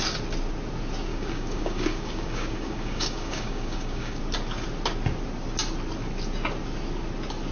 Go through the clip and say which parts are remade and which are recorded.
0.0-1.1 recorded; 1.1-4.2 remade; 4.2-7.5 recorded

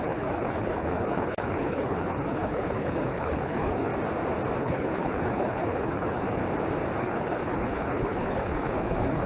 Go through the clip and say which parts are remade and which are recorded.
0.0-3.9 remade; 3.9-4.6 recorded; 4.6-6.4 remade; 6.4-7.0 recorded; 7.0-9.3 remade

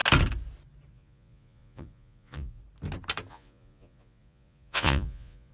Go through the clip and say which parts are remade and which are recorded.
0.0-0.9 recorded; 0.9-2.6 remade; 2.6-3.3 recorded; 3.3-5.5 remade

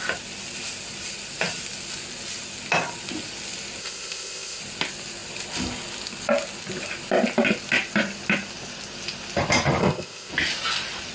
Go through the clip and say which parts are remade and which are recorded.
0.0-3.8 recorded; 3.8-4.6 remade; 4.6-9.8 recorded; 9.8-10.3 remade; 10.3-11.1 recorded

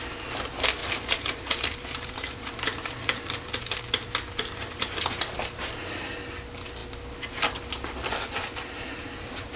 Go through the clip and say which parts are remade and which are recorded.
0.0-0.8 recorded; 0.8-3.8 remade; 3.8-9.6 recorded